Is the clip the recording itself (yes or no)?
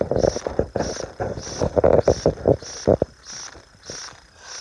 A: yes